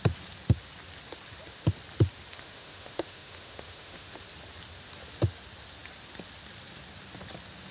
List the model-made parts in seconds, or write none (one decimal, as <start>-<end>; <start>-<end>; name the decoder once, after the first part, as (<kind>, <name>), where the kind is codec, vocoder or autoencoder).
2.3-4.2 (autoencoder, DAC-VAE)